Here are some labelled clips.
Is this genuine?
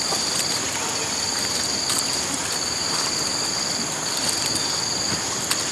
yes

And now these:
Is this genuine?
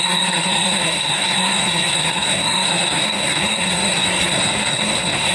no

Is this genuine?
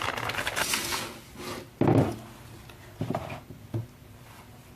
yes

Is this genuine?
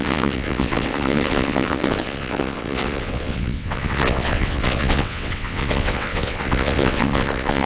no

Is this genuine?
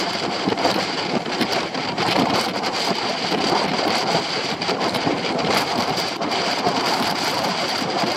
no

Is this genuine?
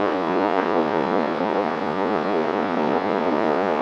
no